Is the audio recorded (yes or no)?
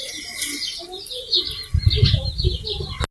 yes